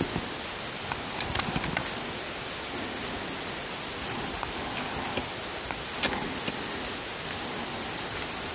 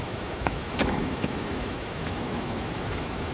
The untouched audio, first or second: first